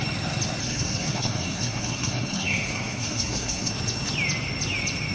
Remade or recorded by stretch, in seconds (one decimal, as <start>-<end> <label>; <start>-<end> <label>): 0.0-0.6 recorded; 0.6-3.7 remade; 3.7-5.1 recorded